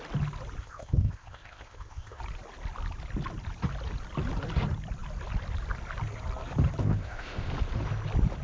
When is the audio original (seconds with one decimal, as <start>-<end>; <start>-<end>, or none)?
0.0-0.6; 2.2-6.8; 7.5-8.4

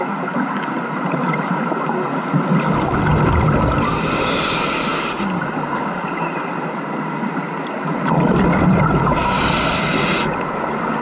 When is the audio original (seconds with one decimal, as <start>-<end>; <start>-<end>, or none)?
0.0-11.0

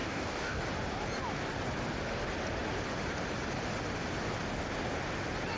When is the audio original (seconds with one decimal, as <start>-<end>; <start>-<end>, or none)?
0.6-5.6

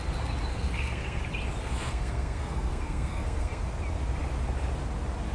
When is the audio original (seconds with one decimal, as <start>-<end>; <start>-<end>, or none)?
0.0-0.5; 1.2-1.6; 3.6-5.3

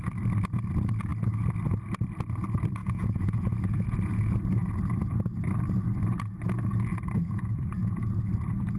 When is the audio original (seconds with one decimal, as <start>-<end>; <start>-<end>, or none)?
0.0-2.8; 4.7-7.2; 8.1-8.8